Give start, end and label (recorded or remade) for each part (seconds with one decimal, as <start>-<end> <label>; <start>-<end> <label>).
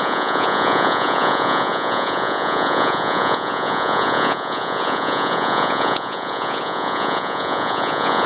0.0-8.3 remade